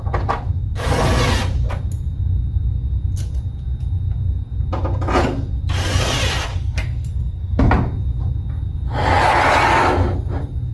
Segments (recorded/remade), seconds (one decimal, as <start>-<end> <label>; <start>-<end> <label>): 0.0-6.5 recorded; 6.5-7.7 remade; 7.7-10.7 recorded